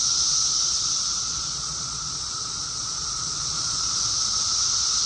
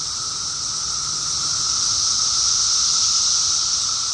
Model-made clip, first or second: first